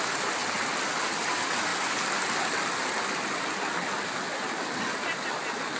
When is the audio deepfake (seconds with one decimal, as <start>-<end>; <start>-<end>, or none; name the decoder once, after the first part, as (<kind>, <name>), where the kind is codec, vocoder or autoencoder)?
none